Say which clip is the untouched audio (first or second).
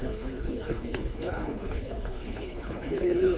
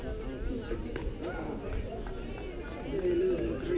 second